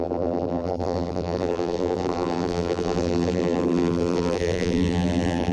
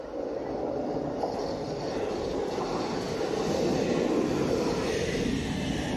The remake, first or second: first